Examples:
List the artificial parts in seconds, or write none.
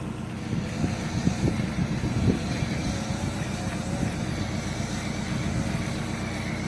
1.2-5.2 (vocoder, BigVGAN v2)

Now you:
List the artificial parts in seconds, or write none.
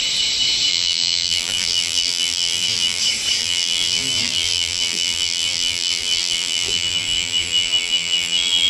0.7-3.0 (vocoder, BigVGAN v2); 3.4-8.7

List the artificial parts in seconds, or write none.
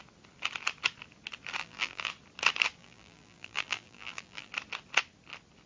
1.6-2.1 (vocoder, BigVGAN v2); 2.8-4.5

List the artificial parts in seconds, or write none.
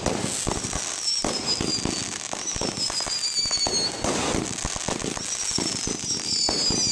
none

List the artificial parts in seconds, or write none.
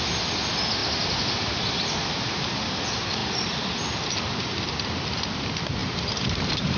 5.8-6.8 (vocoder, BigVGAN v2)